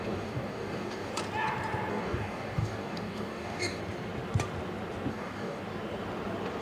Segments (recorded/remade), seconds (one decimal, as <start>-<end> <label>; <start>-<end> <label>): 0.0-1.1 remade; 1.1-1.9 recorded; 1.9-3.8 remade; 3.8-5.1 recorded; 5.1-5.6 remade; 5.6-6.6 recorded